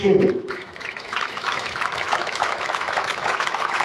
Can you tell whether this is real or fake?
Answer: fake